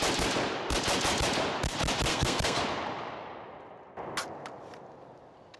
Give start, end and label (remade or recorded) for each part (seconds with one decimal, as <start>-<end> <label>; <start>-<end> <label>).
0.0-2.1 recorded; 2.1-2.6 remade; 2.6-5.6 recorded